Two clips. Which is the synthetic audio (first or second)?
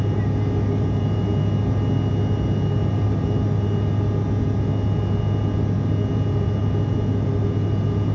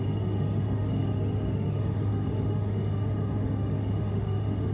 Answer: second